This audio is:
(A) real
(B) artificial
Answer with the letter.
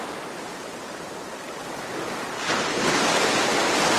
A